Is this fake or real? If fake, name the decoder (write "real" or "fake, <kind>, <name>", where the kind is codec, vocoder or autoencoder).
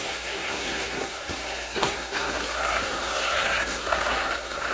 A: fake, codec, SNAC